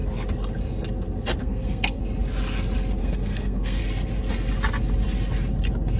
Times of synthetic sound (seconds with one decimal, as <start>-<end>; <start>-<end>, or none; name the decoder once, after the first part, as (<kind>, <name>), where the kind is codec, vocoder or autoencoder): 1.4-2.0 (codec, SNAC); 3.0-3.8